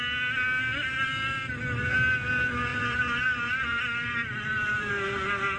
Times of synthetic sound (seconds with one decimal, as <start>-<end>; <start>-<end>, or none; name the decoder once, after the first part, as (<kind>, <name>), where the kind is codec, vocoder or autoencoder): 2.7-4.9 (vocoder, BigVGAN v2)

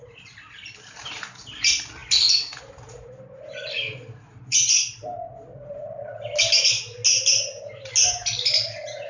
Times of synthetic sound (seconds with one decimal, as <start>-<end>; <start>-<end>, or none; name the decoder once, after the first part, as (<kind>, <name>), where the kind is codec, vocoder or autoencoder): none

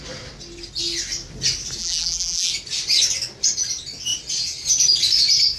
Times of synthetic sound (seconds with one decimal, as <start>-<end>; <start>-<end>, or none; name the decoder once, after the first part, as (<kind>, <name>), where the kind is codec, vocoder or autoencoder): 1.8-2.5 (vocoder, BigVGAN v2)

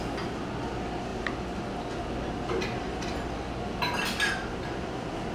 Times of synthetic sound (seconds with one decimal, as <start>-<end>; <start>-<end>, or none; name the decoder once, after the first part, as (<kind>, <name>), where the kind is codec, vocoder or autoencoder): none